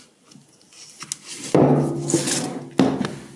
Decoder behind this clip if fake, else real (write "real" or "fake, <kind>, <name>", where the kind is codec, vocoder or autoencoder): real